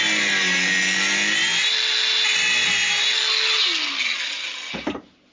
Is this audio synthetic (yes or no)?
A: no